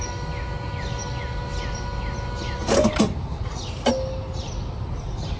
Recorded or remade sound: recorded